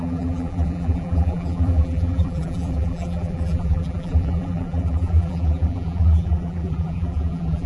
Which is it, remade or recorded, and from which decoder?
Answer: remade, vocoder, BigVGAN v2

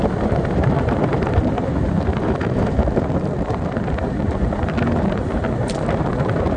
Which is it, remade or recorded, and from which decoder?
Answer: remade, vocoder, BigVGAN v2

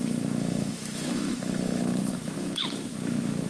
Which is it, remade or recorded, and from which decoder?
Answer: remade, autoencoder, DAC-VAE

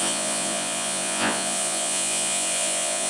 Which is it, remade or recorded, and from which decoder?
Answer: remade, vocoder, Vocos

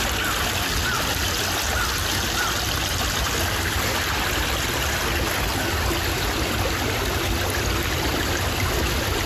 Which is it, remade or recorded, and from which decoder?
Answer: recorded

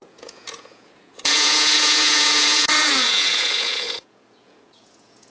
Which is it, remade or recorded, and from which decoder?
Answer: remade, vocoder, Vocos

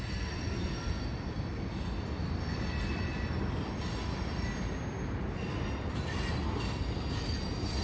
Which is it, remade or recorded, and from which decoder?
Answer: recorded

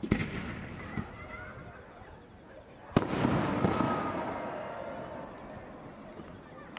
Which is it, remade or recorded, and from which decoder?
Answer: recorded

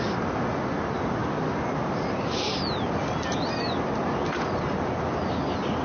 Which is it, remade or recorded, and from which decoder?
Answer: recorded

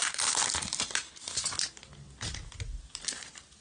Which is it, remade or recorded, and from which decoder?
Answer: recorded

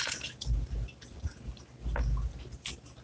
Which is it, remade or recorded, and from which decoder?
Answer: recorded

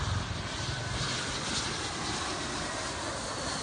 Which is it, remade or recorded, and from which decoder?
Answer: recorded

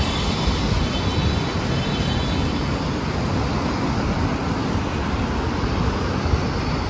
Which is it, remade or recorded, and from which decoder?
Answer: recorded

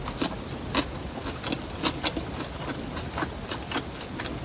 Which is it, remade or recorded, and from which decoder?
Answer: recorded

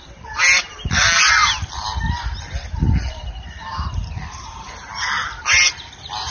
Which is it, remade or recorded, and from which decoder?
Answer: remade, vocoder, BigVGAN v2